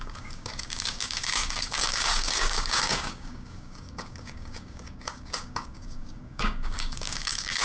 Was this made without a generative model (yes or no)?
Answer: no